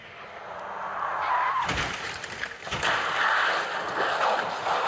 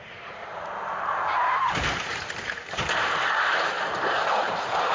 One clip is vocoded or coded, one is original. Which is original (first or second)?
first